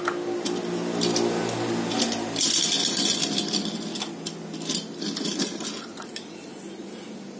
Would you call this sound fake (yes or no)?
no